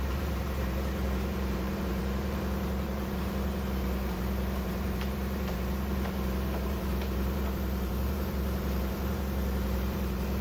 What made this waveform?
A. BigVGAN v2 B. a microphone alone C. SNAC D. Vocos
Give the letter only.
A